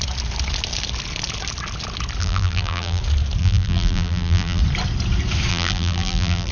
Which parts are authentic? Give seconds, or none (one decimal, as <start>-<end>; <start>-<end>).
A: 0.0-2.2; 3.0-3.4; 4.6-5.5